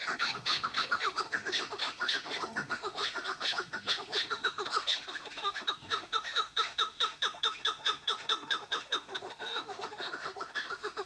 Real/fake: fake